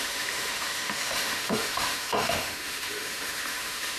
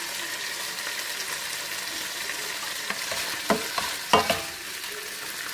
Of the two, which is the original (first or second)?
second